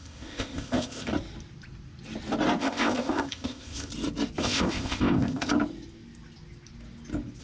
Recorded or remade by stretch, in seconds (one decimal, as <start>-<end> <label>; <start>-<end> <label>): 0.0-1.1 remade; 1.1-2.6 recorded; 2.6-3.9 remade; 3.9-4.4 recorded; 4.4-5.5 remade; 5.5-7.4 recorded